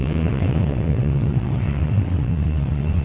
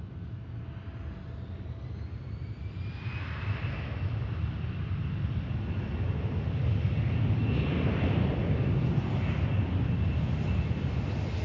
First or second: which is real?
second